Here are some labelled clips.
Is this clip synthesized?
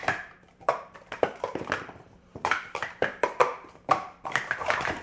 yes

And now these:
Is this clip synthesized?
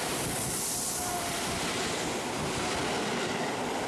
no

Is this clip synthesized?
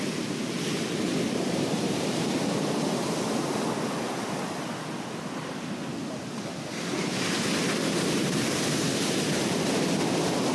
no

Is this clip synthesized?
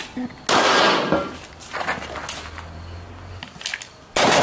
no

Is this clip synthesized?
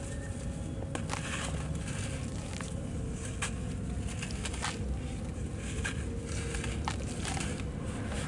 no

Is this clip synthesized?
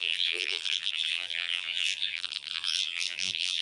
yes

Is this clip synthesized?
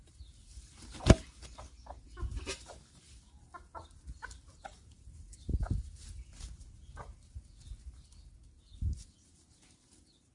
yes